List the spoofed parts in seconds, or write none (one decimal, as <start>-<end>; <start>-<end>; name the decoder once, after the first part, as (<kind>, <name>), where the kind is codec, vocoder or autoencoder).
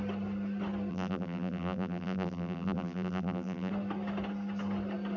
0.9-3.7 (vocoder, BigVGAN v2)